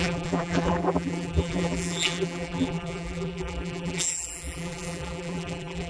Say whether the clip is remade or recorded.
remade